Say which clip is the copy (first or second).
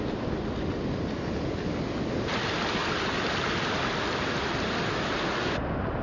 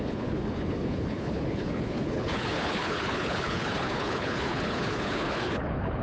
second